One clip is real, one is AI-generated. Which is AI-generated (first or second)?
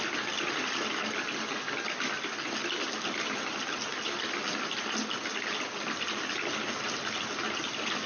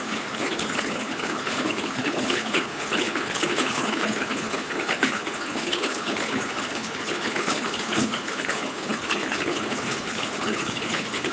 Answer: second